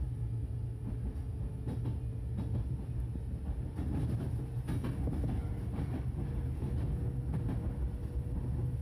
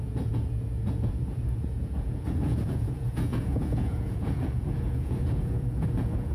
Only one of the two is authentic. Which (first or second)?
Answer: first